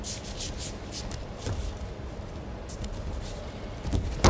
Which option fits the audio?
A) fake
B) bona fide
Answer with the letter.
B